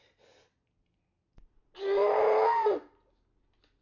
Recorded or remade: recorded